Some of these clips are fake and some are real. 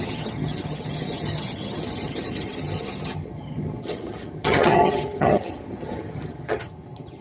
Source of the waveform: fake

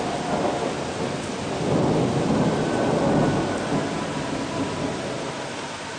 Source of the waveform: real